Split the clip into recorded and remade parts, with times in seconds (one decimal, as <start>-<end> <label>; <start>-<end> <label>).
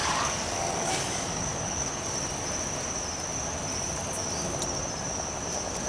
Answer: 0.0-1.9 remade; 1.9-5.9 recorded